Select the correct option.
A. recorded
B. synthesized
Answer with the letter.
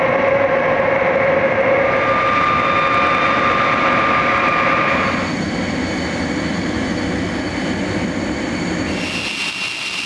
A